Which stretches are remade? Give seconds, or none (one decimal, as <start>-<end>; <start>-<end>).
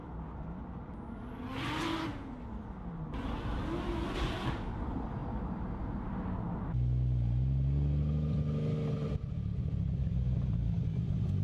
none